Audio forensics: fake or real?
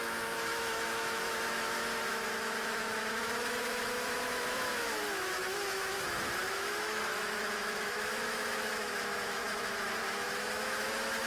fake